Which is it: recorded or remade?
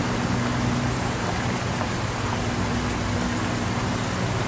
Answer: recorded